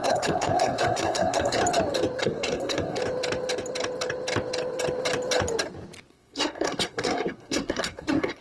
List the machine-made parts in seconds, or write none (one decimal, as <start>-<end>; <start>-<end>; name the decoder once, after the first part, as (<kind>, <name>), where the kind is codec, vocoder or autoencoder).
0.0-1.6 (codec, SNAC); 2.2-3.0; 6.1-8.4